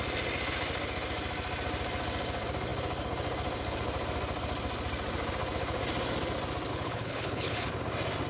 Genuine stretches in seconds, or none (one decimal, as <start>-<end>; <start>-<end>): 0.0-6.7; 7.7-8.3